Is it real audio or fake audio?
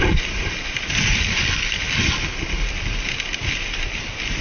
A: real